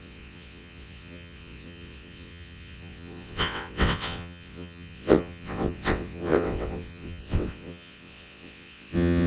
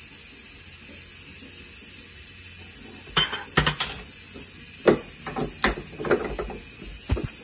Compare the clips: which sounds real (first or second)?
second